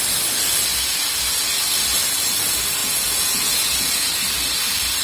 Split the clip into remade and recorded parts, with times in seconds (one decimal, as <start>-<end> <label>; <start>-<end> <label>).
0.0-2.8 recorded; 2.8-3.9 remade; 3.9-5.0 recorded